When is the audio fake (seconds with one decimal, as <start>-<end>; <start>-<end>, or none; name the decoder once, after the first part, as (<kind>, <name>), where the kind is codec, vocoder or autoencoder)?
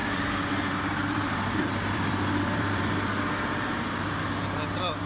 0.0-3.1 (vocoder, BigVGAN v2)